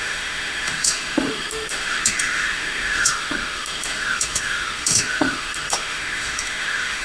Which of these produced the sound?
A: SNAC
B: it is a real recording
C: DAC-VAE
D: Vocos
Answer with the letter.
C